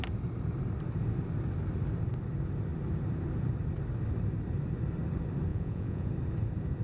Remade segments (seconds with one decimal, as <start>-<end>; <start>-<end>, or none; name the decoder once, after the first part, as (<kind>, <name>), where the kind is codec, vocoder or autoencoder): 5.5-6.1 (vocoder, Vocos)